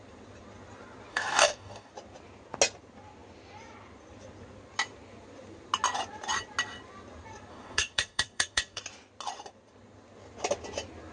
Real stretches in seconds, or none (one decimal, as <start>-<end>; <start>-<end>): 0.0-1.1; 1.9-7.5; 8.8-11.1